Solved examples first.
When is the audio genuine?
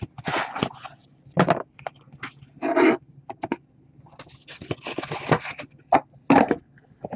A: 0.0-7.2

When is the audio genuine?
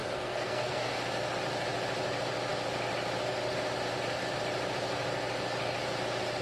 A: 0.9-6.4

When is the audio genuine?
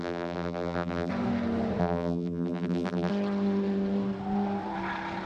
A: 1.1-1.8; 3.1-5.3